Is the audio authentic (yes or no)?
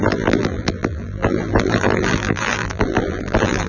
no